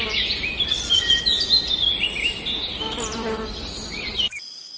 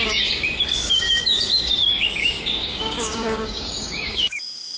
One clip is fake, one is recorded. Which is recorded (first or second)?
first